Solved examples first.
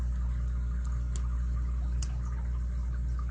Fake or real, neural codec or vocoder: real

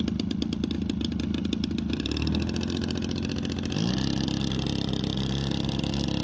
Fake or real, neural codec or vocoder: real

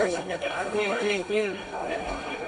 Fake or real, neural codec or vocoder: fake, codec, SNAC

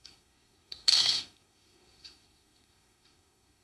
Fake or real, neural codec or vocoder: fake, codec, SNAC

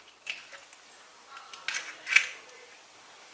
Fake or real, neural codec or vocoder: real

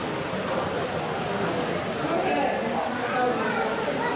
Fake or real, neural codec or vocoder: real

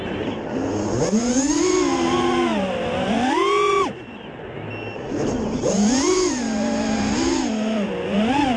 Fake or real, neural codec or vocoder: real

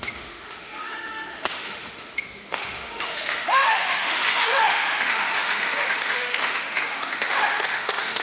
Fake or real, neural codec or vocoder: fake, autoencoder, DAC-VAE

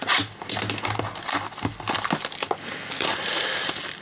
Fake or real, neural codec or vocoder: real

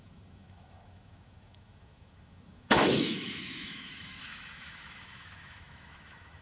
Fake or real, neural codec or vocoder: fake, autoencoder, DAC-VAE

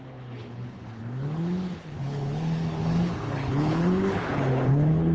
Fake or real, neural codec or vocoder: fake, codec, HILCodec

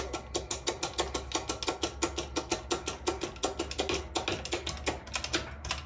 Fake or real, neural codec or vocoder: real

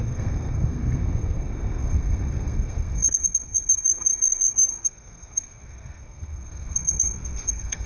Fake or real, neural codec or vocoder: fake, codec, SNAC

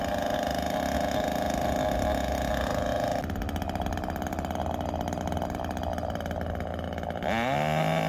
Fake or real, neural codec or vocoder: real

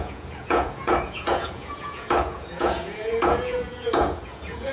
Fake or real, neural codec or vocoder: fake, vocoder, Vocos